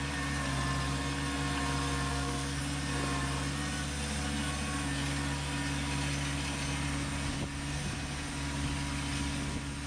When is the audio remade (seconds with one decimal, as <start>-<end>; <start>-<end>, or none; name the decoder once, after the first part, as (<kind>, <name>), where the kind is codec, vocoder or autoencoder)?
2.1-2.6 (codec, SNAC)